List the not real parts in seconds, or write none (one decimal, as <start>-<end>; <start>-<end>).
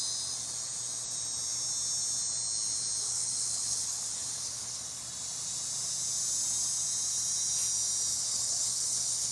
3.0-4.8; 8.1-9.3